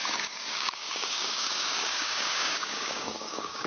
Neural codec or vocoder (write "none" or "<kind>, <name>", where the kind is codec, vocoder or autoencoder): codec, DAC